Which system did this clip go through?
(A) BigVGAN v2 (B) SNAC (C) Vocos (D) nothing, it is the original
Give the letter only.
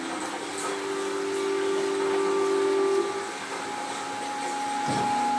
D